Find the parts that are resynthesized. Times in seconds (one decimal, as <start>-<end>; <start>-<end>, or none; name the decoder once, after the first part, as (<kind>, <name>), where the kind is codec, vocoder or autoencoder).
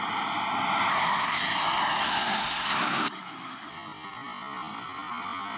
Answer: 0.9-1.4 (codec, SNAC); 2.0-3.7